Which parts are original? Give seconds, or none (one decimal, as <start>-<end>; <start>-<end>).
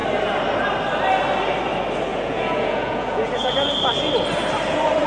0.0-2.1; 3.7-5.1